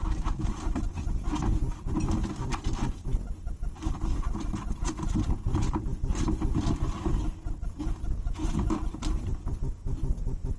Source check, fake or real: real